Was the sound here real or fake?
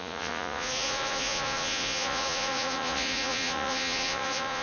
fake